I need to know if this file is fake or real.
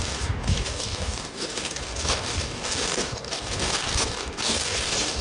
fake